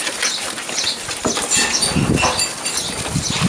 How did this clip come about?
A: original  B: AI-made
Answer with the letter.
A